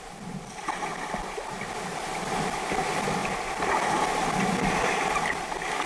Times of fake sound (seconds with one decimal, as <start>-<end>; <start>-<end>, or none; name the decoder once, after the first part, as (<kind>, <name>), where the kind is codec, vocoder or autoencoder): none